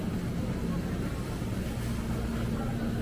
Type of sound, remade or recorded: recorded